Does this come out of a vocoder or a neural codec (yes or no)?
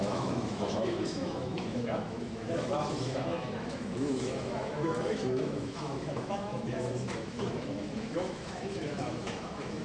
yes